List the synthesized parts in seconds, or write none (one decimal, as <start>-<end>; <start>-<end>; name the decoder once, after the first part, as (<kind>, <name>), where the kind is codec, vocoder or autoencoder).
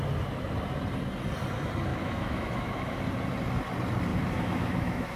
1.9-3.0 (autoencoder, DAC-VAE); 4.1-5.2